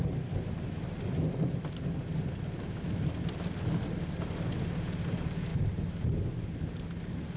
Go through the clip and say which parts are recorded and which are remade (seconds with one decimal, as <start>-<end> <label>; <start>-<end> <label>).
0.0-7.4 recorded